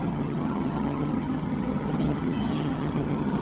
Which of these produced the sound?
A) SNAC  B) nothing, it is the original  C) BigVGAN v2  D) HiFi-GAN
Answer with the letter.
D